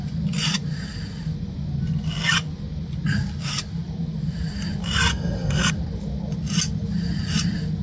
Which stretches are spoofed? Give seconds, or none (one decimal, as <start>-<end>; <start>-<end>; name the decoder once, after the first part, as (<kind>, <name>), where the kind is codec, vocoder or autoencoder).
5.1-5.7 (codec, SNAC)